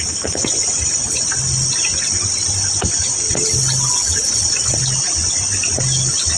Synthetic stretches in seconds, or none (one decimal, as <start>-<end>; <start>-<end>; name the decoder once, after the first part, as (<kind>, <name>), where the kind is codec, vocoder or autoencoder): 4.0-4.8 (vocoder, Vocos)